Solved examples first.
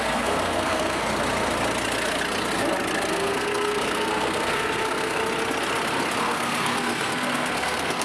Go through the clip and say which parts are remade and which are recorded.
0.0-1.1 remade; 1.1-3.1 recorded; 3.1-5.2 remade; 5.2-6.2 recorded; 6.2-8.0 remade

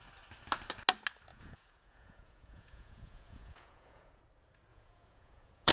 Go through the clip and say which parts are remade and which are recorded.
0.0-1.3 recorded; 1.3-4.2 remade; 4.2-4.7 recorded; 4.7-5.7 remade

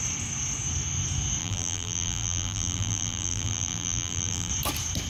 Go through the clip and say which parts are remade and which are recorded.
0.0-1.4 recorded; 1.4-4.5 remade; 4.5-5.1 recorded